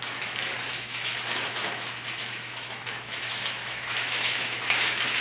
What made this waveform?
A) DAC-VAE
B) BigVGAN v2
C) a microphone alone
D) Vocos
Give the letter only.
A